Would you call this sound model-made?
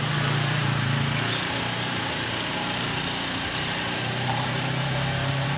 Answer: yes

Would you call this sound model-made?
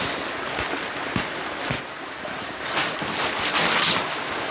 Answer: no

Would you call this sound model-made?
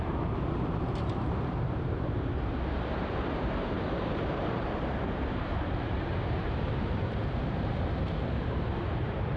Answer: yes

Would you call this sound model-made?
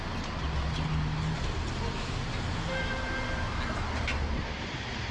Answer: no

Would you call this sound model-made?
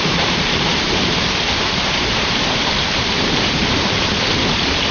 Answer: yes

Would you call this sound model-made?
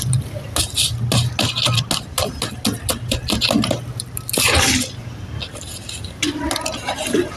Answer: no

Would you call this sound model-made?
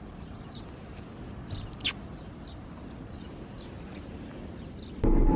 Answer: no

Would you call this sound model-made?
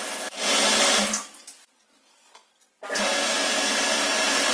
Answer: no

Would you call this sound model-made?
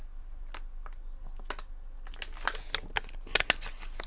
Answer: no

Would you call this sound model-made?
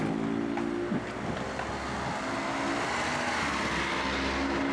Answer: no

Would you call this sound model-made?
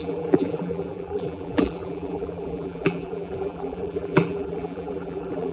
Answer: yes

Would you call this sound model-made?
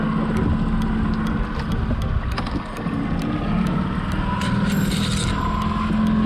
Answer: no